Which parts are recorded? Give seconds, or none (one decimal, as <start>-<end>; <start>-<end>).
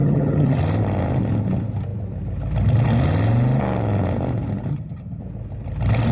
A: 0.6-4.7; 5.2-6.1